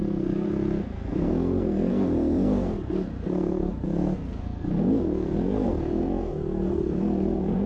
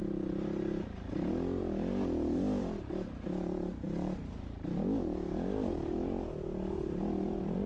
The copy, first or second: first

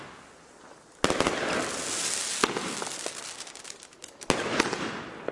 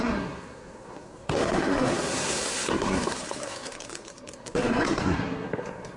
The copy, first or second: second